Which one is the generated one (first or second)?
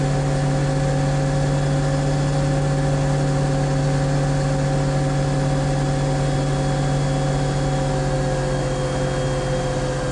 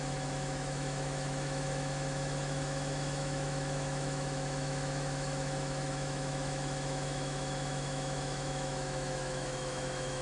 second